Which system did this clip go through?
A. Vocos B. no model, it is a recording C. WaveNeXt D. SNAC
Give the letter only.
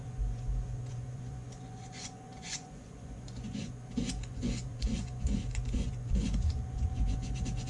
A